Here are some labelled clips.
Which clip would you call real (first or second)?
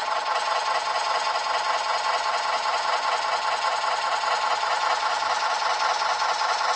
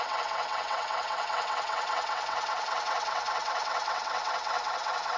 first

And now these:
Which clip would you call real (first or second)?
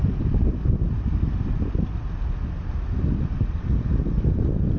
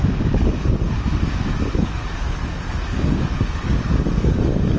first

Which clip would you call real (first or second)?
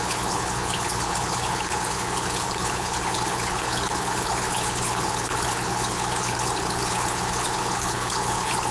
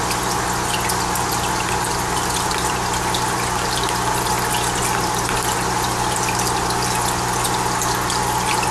second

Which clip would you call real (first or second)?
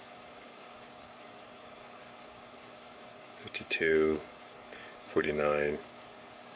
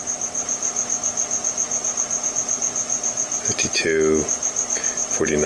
second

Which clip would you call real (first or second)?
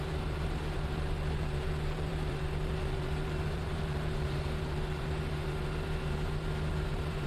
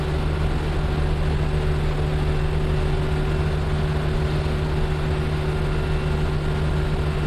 second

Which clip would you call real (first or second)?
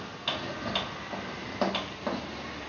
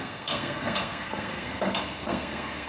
first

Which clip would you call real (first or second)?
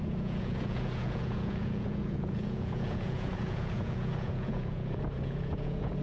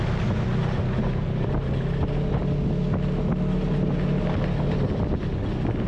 second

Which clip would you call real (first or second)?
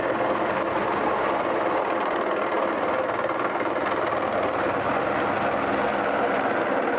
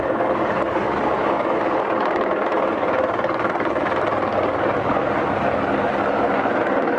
first